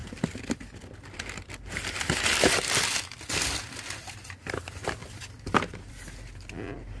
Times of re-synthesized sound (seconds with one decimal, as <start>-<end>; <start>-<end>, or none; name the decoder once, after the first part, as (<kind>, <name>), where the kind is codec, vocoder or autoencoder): none